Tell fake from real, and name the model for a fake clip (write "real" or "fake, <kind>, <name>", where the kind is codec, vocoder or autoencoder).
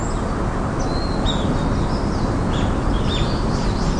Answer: real